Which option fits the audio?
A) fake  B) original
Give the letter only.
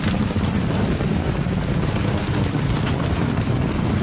B